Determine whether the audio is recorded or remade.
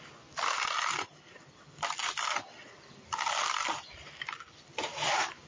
remade